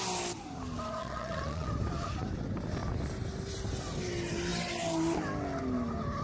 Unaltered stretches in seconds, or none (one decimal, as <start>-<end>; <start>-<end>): 0.0-1.0; 1.7-6.2